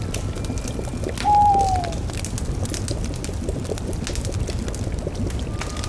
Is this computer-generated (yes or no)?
no